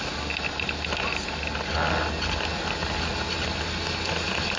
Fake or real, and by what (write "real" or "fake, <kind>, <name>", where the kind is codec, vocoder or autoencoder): real